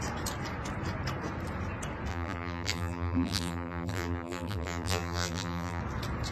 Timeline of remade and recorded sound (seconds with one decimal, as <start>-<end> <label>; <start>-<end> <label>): 0.0-2.1 recorded; 2.1-5.8 remade; 5.8-6.3 recorded